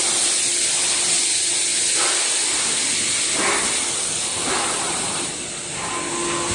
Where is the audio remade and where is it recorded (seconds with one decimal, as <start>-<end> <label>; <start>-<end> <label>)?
0.0-6.5 recorded